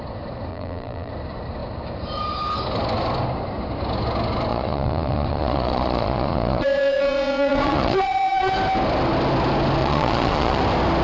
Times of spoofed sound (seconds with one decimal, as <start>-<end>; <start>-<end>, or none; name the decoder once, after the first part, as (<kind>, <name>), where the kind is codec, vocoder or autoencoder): 0.5-1.1 (vocoder, Vocos); 4.5-8.5; 9.8-10.6